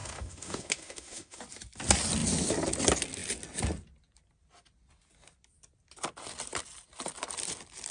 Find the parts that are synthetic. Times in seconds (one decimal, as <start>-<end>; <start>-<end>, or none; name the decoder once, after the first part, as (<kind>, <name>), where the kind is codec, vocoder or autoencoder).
0.0-1.4 (autoencoder, DAC-VAE)